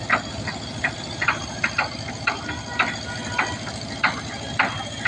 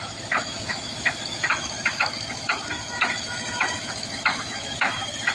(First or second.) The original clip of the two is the first